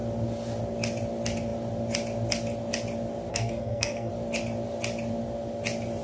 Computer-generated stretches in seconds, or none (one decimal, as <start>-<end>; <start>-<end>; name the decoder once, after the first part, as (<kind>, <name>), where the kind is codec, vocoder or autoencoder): 3.3-4.1 (codec, SNAC)